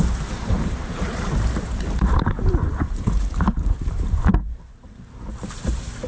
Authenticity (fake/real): fake